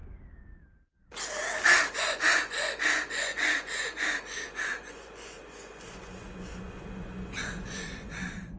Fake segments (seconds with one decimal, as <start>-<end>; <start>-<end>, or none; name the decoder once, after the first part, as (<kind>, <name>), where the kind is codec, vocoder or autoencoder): 2.0-8.6 (vocoder, Vocos)